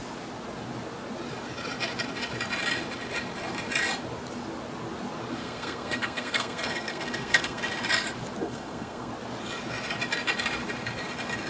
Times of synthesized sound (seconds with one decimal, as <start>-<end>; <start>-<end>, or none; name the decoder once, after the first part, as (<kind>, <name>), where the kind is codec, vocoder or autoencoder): 5.4-7.6 (codec, SNAC); 8.4-9.1